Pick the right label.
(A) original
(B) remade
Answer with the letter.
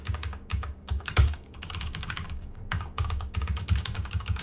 B